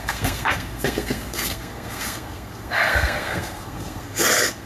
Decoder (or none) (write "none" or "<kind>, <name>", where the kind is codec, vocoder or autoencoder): codec, SNAC